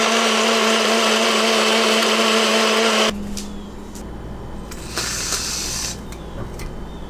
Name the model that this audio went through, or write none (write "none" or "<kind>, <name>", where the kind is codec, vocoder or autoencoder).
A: none